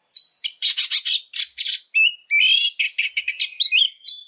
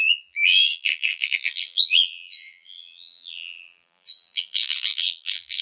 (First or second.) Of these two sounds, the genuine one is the first